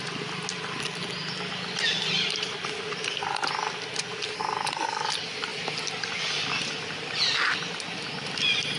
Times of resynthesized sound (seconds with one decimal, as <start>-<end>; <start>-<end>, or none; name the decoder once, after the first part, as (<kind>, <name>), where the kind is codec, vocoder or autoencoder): none